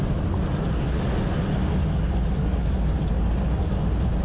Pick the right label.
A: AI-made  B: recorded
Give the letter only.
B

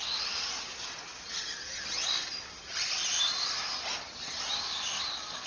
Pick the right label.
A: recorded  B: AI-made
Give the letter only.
A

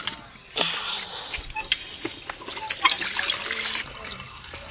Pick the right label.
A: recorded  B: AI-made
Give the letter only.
A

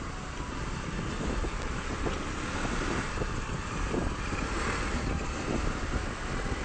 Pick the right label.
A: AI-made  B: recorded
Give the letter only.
B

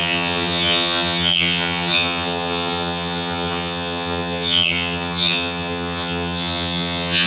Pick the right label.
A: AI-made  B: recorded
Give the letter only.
A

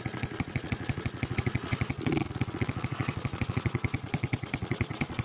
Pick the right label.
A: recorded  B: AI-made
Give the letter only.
B